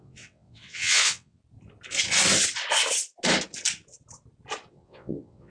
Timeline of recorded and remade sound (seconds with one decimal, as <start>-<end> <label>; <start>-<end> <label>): 0.0-1.4 remade; 1.4-4.7 recorded; 4.7-5.5 remade